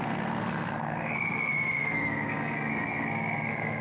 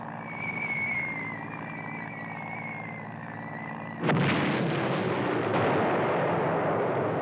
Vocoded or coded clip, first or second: first